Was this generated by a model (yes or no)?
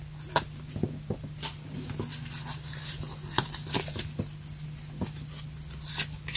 no